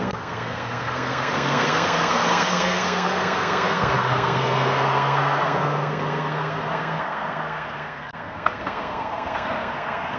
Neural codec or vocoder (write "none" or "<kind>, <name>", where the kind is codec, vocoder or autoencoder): codec, SNAC